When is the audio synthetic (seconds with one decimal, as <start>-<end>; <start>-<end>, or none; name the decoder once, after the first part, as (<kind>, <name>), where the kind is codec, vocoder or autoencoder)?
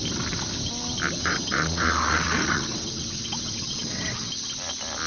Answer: 1.2-4.3 (vocoder, WaveNeXt)